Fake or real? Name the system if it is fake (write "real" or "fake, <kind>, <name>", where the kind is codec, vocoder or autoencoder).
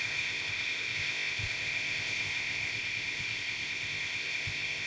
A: fake, codec, ZipCodec